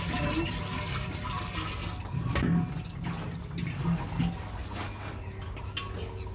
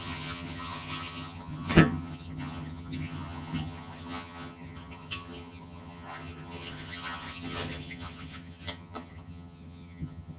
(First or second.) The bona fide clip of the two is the first